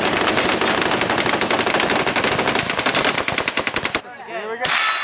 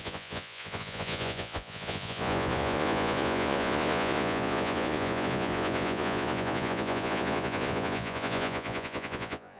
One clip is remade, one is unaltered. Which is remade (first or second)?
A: second